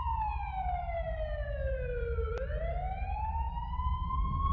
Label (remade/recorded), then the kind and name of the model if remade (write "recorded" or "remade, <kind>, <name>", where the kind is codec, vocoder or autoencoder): recorded